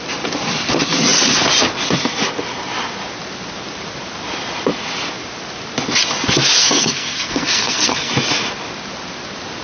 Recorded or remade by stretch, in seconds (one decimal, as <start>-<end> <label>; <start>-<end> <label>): 0.0-6.6 recorded; 6.6-8.1 remade; 8.1-9.6 recorded